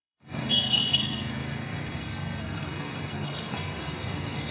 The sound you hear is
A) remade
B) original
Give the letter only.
A